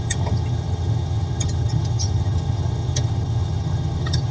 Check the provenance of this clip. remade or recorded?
remade